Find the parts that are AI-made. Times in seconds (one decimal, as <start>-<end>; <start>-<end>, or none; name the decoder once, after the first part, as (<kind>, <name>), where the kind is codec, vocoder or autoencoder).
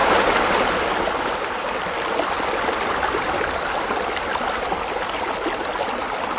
none